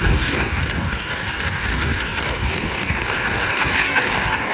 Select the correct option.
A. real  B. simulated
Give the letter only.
B